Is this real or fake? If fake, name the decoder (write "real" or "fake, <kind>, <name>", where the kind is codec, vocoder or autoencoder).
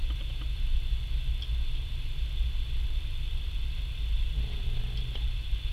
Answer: real